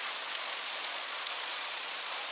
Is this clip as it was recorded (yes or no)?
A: no